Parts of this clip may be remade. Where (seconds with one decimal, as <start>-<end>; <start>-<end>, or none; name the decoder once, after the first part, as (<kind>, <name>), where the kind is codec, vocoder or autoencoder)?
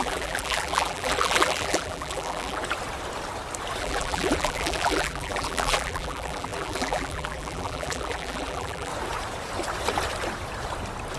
0.0-2.6 (vocoder, BigVGAN v2); 3.8-8.9